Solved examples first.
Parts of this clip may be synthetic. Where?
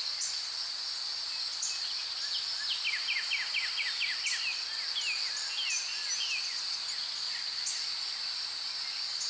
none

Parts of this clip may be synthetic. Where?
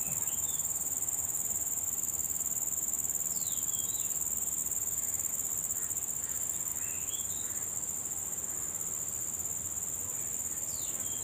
none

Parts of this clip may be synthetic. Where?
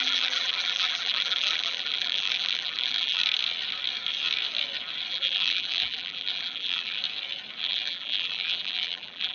0.0-3.2 (vocoder, BigVGAN v2); 5.1-7.0; 7.6-9.3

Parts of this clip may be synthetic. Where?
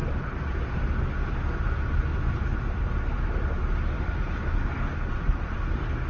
0.0-1.1 (vocoder, BigVGAN v2); 2.1-5.5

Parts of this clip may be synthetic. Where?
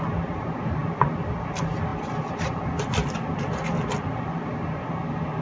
none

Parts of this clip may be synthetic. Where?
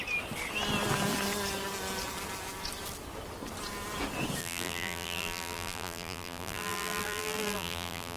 4.4-8.2 (vocoder, BigVGAN v2)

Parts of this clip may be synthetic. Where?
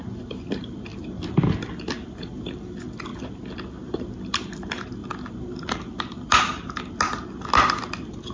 0.9-1.5 (vocoder, BigVGAN v2)